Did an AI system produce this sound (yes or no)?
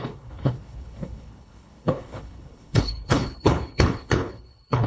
yes